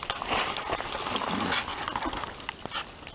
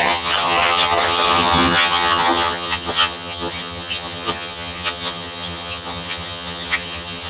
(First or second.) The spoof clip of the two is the second